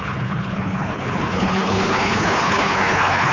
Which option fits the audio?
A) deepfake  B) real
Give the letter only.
A